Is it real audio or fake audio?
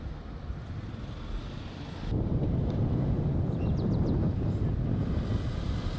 real